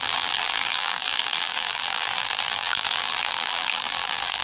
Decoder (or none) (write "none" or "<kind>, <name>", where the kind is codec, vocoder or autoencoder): vocoder, BigVGAN v2